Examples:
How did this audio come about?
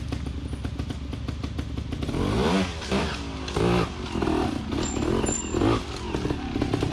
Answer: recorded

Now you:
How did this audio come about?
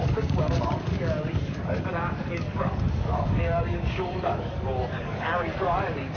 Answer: remade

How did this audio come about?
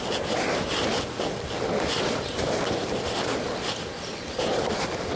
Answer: recorded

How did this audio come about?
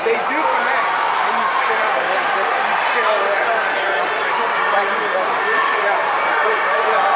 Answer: recorded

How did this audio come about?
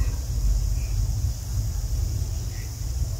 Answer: recorded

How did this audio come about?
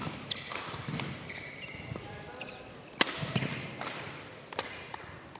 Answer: recorded